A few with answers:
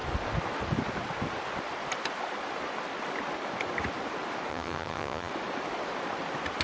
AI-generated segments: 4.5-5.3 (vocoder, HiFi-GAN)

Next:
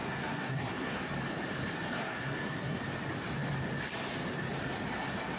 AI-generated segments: 0.0-1.1 (codec, SNAC); 2.0-2.8

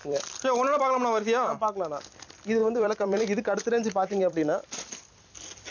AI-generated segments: 0.0-0.8 (vocoder, BigVGAN v2); 2.6-5.2

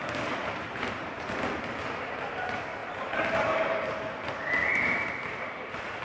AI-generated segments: 0.4-1.1 (vocoder, BigVGAN v2); 2.8-4.3; 4.7-5.5

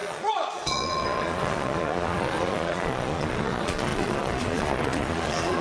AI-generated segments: 0.0-5.6 (vocoder, Vocos)

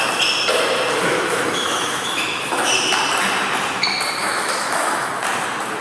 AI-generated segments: 1.1-2.7 (autoencoder, DAC-VAE); 4.2-5.1

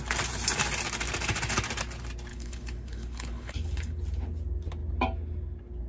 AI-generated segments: 2.3-4.0 (codec, HILCodec)

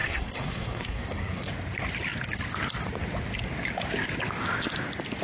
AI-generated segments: 0.0-1.5 (codec, SNAC)